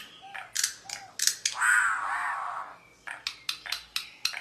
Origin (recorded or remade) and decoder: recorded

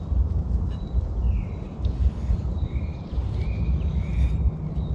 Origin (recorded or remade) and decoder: recorded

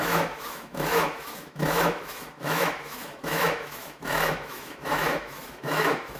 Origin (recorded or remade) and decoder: remade, autoencoder, DAC-VAE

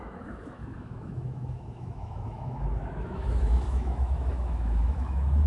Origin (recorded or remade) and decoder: remade, autoencoder, DAC-VAE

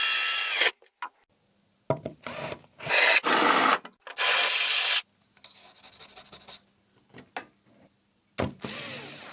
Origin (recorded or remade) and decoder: recorded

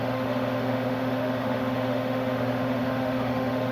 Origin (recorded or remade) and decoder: remade, autoencoder, DAC-VAE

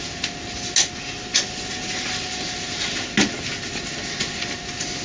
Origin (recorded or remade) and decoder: recorded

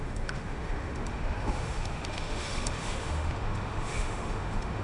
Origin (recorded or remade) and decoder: remade, autoencoder, DAC-VAE